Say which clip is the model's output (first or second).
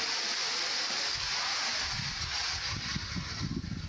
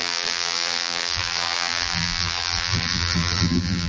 second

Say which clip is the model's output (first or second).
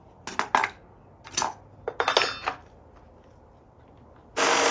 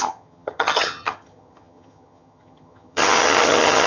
second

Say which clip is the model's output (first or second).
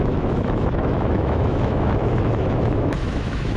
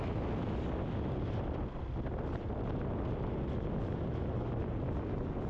first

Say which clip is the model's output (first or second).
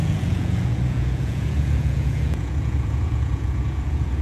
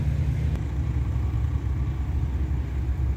first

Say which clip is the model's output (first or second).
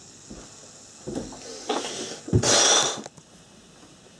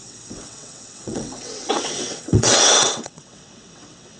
second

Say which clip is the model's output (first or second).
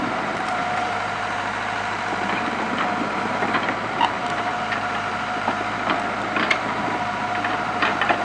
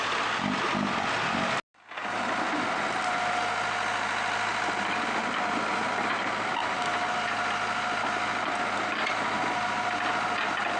first